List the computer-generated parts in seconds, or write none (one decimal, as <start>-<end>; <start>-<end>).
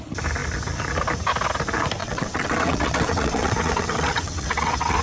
2.0-5.0